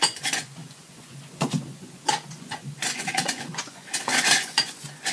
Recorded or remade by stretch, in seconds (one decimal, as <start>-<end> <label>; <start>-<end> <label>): 0.0-5.1 remade